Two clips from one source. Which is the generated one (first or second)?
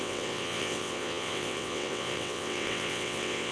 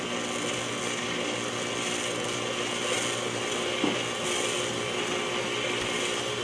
first